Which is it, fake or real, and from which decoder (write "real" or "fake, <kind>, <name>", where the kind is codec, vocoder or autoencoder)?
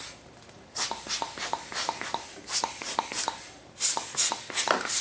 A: real